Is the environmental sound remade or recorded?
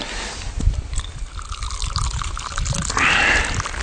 recorded